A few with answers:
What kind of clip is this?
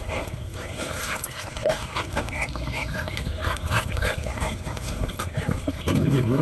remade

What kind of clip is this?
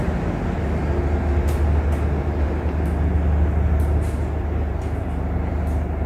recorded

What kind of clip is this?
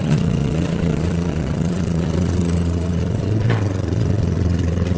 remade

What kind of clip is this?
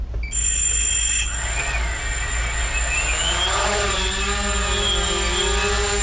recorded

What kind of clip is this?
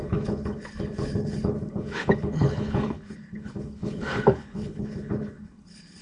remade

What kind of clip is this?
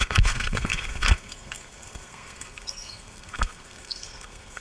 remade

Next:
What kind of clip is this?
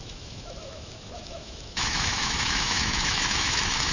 remade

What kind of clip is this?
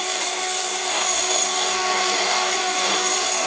remade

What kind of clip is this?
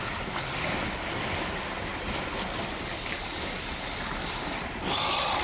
recorded